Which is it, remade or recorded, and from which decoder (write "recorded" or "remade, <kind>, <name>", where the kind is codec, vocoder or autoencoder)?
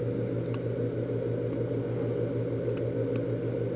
recorded